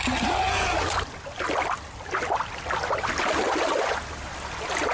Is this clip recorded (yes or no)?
yes